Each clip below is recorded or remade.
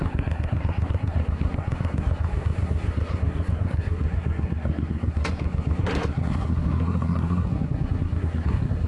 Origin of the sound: remade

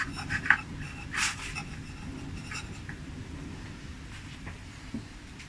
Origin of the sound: recorded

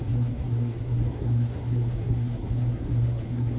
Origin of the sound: remade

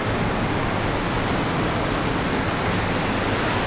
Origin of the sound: recorded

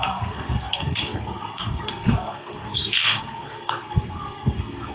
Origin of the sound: remade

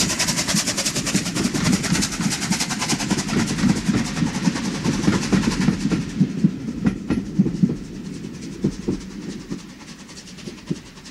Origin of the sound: recorded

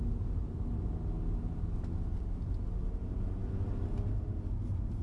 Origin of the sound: recorded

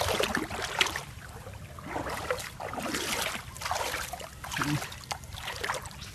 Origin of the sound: recorded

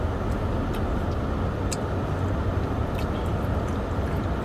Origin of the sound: recorded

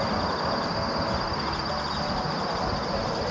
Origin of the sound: recorded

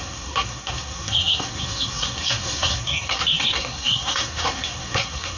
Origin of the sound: remade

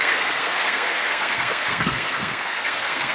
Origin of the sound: remade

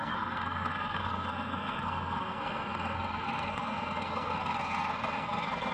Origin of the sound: remade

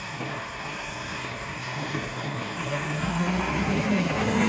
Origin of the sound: remade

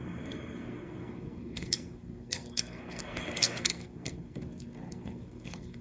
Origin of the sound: remade